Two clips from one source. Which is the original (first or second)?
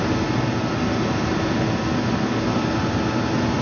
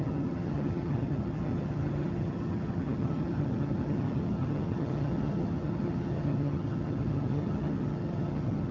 first